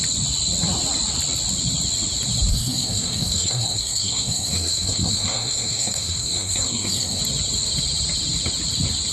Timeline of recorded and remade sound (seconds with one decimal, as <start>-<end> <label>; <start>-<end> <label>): 0.0-2.5 recorded; 2.5-7.2 remade; 7.2-9.1 recorded

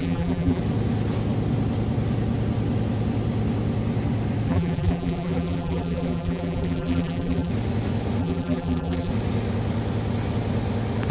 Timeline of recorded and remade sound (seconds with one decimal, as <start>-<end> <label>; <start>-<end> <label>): 0.0-0.6 remade; 0.6-4.5 recorded; 4.5-7.5 remade; 7.5-8.2 recorded; 8.2-9.1 remade; 9.1-11.1 recorded